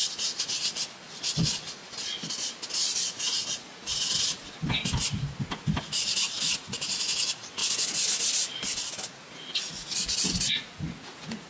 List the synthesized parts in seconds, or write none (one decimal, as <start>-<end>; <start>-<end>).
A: 0.0-0.6; 3.1-4.4; 6.2-7.6; 9.1-11.5